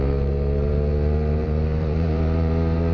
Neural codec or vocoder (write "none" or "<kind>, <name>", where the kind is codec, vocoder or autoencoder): vocoder, BigVGAN v2